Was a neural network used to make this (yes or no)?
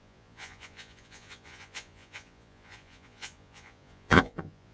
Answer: yes